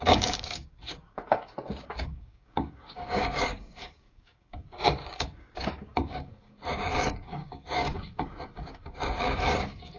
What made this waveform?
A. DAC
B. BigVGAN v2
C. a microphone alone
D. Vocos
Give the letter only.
A